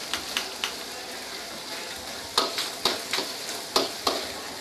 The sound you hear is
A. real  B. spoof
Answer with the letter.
A